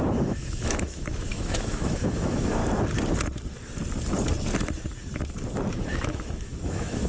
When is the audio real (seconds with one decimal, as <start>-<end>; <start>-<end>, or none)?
2.6-5.7